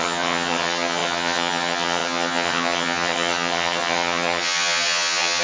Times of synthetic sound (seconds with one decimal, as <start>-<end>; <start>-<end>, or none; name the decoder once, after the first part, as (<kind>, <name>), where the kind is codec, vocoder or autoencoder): 0.0-5.4 (vocoder, HiFi-GAN)